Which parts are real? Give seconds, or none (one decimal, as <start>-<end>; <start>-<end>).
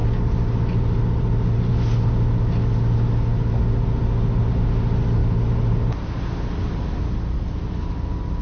0.0-8.4